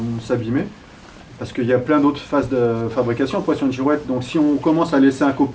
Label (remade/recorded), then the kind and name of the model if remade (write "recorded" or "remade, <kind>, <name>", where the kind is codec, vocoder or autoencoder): recorded